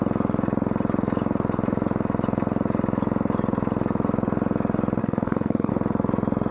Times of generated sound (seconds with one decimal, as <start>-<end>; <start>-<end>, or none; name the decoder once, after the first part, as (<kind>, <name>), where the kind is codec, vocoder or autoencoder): 5.0-5.7 (codec, SNAC)